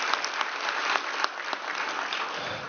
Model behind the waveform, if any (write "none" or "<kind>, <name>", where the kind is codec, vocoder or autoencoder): none